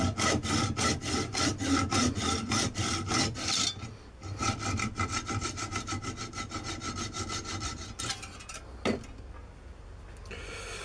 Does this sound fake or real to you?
real